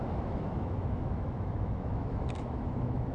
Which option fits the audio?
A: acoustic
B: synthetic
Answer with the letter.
B